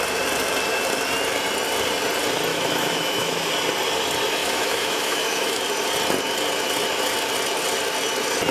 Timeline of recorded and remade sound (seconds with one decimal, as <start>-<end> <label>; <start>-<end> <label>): 0.0-2.5 recorded; 2.5-3.5 remade; 3.5-4.4 recorded; 4.4-5.6 remade; 5.6-8.5 recorded